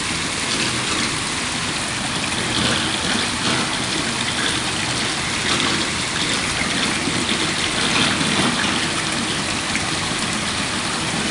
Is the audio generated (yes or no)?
no